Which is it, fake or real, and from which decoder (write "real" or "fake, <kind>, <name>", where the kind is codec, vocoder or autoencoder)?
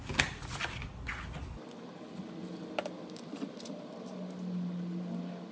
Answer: real